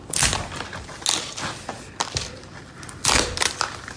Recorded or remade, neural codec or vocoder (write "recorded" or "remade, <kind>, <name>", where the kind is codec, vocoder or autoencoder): recorded